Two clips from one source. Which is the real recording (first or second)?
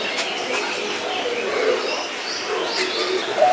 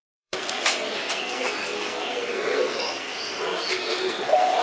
first